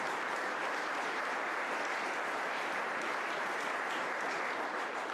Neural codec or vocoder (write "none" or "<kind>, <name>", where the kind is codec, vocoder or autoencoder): vocoder, BigVGAN v2